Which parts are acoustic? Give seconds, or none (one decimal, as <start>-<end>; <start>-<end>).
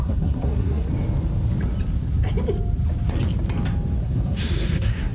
0.9-4.0